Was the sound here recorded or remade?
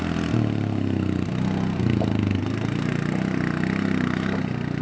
recorded